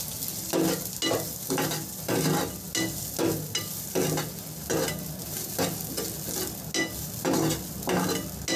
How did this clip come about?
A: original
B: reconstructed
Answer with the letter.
A